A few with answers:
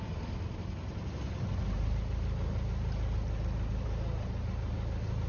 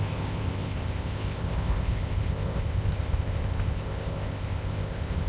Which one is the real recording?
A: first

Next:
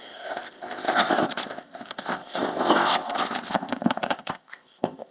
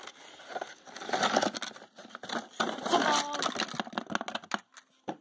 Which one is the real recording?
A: second